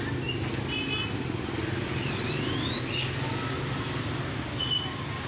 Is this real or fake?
real